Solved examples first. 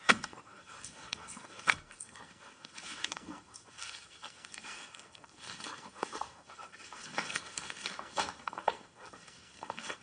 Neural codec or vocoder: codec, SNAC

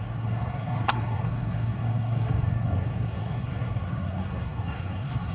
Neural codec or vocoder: codec, SNAC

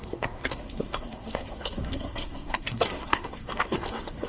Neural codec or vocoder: codec, SNAC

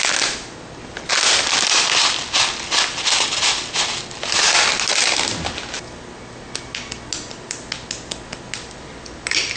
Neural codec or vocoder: none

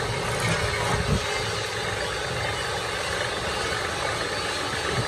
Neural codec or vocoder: none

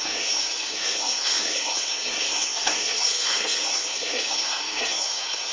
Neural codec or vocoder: codec, SNAC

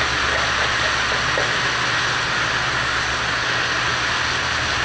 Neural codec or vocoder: none